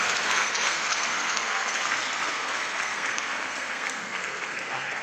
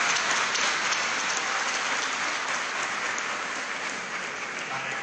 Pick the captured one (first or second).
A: second